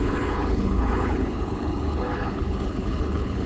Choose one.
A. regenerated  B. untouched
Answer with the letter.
A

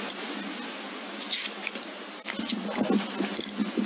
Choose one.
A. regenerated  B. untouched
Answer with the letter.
B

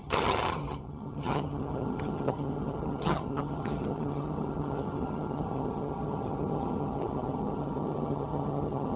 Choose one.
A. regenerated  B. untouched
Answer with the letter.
A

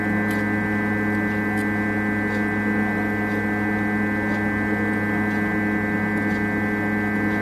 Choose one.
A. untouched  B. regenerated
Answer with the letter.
A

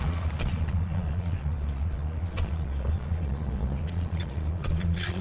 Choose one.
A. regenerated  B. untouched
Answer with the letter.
A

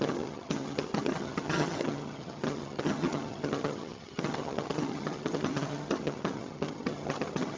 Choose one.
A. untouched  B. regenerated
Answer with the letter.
B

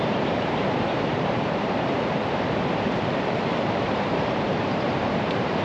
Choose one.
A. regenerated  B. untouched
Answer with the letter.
A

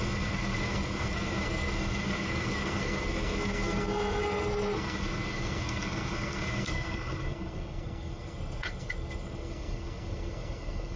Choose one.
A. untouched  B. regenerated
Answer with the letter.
B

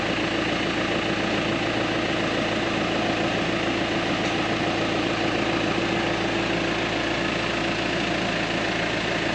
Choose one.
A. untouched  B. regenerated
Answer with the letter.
A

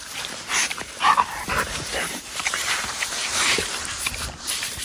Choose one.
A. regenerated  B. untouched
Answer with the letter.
A